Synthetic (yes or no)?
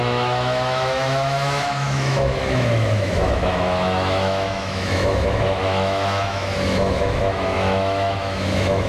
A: yes